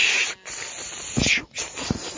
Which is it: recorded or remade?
recorded